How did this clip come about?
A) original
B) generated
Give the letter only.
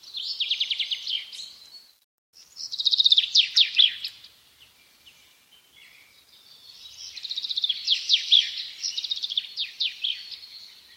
A